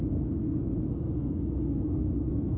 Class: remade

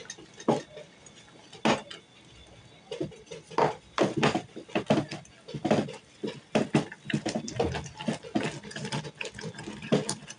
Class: recorded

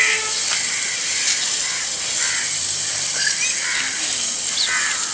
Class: recorded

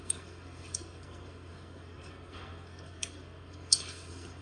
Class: remade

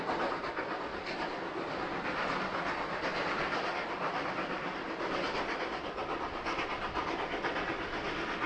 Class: recorded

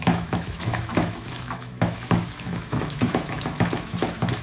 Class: remade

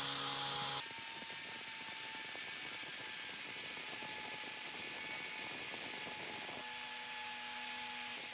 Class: recorded